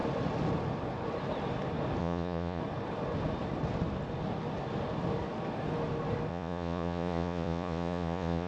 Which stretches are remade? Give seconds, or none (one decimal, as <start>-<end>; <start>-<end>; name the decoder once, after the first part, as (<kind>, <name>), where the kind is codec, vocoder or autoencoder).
2.0-2.6 (vocoder, Vocos); 6.3-8.5